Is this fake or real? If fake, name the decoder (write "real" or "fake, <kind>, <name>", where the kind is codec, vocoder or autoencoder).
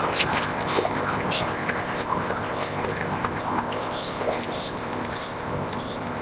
fake, codec, ZipCodec